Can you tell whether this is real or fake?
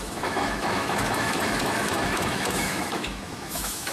fake